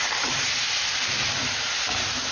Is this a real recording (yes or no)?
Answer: yes